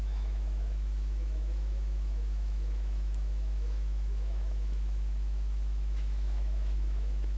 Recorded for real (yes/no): no